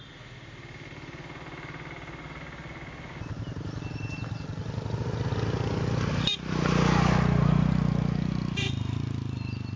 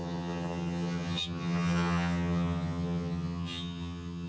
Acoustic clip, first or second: first